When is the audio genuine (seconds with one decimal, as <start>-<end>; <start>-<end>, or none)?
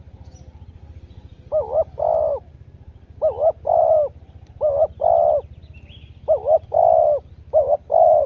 0.0-8.3